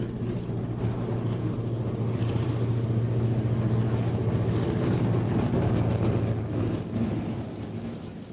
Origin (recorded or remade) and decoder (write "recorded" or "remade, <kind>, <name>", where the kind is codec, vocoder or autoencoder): recorded